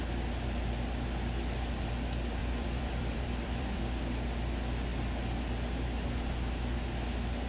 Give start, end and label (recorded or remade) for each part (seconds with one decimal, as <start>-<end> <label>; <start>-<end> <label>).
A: 0.0-2.4 recorded; 2.4-3.8 remade; 3.8-7.5 recorded